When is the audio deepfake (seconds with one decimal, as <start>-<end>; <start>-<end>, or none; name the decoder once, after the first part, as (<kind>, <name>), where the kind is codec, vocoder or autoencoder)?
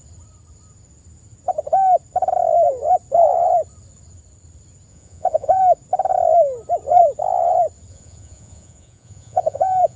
4.9-5.6 (vocoder, Vocos); 7.9-10.0